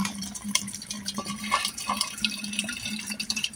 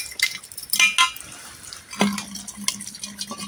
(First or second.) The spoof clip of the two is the first